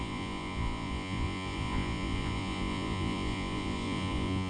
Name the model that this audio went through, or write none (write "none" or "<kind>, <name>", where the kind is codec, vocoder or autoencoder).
vocoder, Vocos